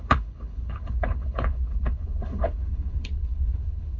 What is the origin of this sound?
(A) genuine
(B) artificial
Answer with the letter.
B